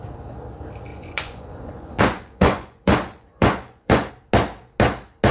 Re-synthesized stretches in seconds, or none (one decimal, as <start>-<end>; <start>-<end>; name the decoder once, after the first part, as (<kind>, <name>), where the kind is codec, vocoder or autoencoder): 0.9-4.1 (vocoder, Vocos)